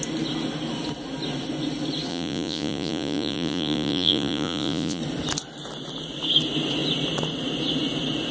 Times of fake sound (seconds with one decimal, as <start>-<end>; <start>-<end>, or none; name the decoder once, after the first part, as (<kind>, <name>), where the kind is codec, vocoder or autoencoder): 2.1-5.0 (vocoder, Vocos)